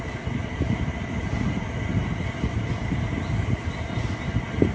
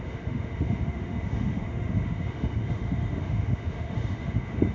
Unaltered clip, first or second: first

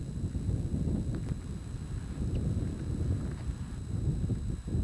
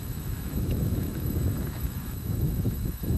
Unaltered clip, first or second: first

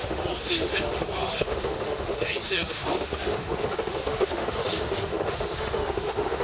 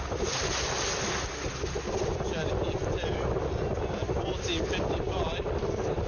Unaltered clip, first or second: second